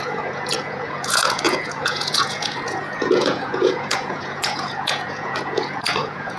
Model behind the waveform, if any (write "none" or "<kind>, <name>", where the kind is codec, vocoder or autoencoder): vocoder, Vocos